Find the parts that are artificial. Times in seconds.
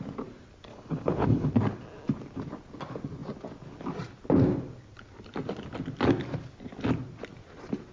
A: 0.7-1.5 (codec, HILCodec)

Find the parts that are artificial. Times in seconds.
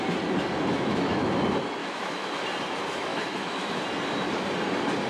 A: 0.7-1.3 (autoencoder, DAC-VAE); 1.8-2.3; 3.1-3.8